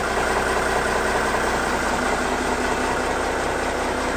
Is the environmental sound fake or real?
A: real